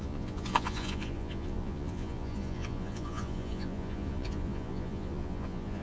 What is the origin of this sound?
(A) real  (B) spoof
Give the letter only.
B